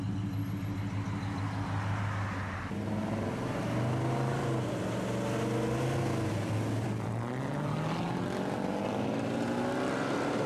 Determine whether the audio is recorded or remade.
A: recorded